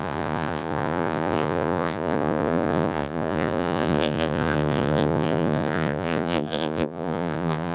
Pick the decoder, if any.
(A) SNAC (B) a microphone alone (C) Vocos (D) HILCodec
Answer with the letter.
C